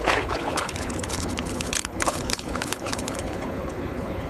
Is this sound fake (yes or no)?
yes